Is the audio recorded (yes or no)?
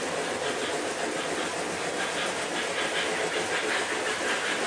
yes